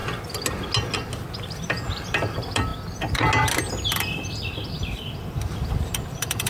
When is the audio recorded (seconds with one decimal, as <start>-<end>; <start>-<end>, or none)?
0.0-1.6; 2.7-3.7